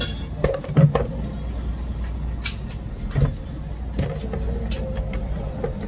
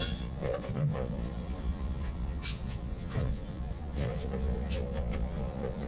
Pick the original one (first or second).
first